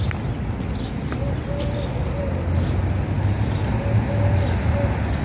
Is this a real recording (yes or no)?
yes